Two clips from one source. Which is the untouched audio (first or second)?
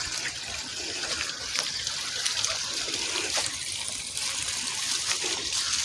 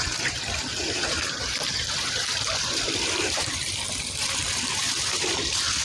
first